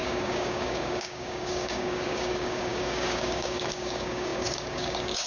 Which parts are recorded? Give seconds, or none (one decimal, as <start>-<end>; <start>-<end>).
none